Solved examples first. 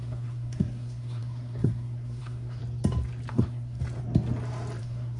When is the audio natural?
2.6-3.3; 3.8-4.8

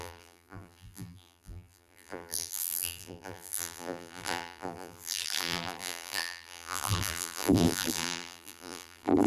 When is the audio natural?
none

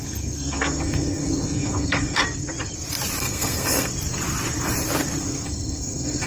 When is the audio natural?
2.2-3.2; 3.9-5.2

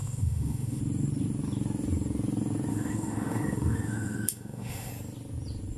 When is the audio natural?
0.8-2.7; 4.9-5.8

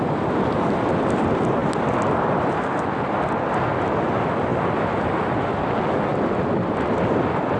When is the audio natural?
0.0-7.6

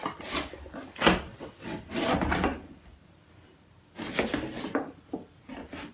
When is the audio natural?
0.0-1.3; 2.0-5.9

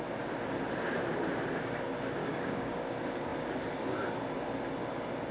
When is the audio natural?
0.0-2.2; 2.9-5.3